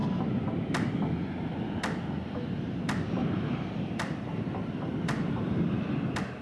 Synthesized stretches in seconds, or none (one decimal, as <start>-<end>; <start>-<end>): 3.2-6.0